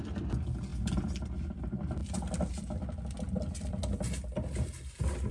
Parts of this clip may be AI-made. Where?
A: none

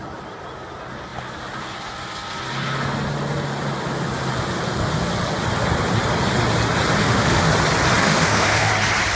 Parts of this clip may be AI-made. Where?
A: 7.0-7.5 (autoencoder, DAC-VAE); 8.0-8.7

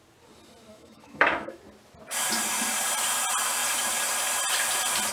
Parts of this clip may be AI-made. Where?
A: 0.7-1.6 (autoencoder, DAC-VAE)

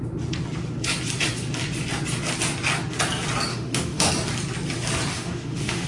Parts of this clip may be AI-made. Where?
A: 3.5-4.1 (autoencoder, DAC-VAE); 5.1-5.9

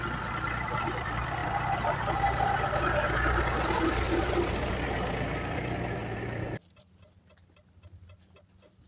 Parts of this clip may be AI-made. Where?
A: none